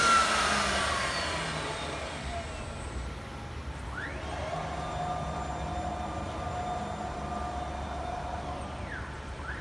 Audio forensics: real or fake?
real